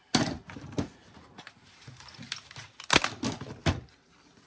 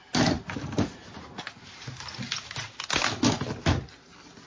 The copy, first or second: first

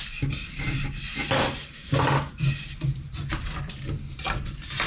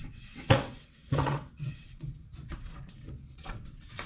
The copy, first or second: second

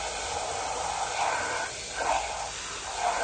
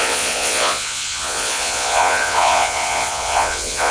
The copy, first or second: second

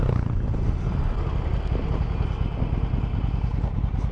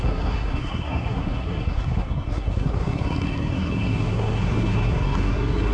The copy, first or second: second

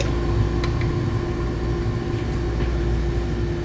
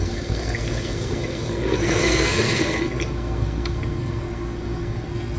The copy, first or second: second